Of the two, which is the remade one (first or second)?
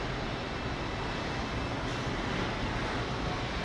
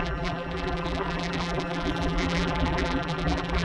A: second